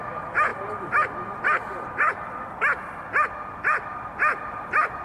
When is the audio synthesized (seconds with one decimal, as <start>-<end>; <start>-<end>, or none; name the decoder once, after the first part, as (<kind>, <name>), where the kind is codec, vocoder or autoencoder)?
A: none